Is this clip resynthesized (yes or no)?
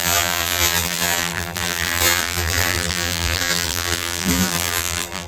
yes